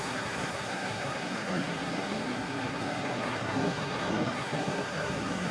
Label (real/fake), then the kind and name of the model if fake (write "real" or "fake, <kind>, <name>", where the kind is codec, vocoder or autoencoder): fake, codec, SNAC